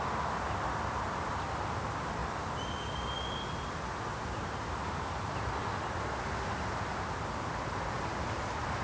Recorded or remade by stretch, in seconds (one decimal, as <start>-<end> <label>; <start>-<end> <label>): 0.0-8.8 recorded